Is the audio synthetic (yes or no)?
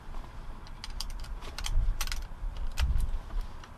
no